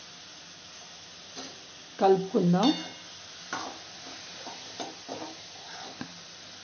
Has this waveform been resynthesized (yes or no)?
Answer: no